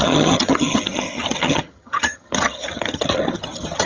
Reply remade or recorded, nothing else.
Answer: remade